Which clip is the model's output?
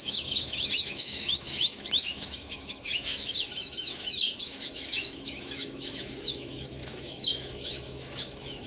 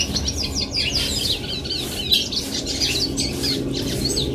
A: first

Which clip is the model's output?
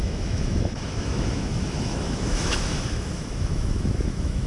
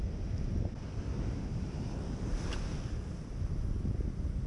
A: first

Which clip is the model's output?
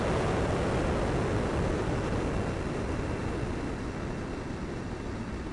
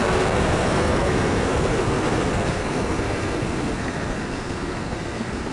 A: second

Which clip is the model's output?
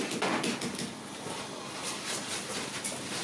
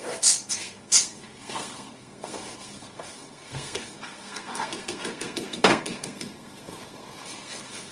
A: second